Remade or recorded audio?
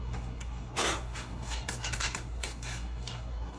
remade